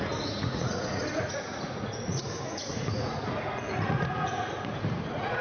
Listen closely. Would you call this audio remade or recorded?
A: remade